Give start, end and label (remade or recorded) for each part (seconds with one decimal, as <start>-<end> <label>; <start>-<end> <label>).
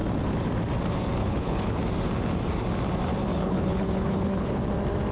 0.0-1.2 recorded; 1.2-1.7 remade; 1.7-3.3 recorded; 3.3-4.6 remade; 4.6-5.1 recorded